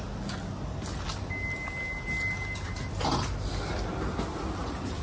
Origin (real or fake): real